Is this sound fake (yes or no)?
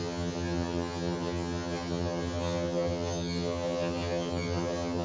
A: yes